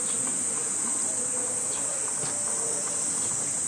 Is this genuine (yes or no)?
yes